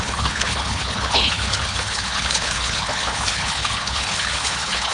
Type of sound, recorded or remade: remade